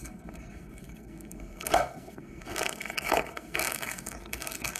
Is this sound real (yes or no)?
no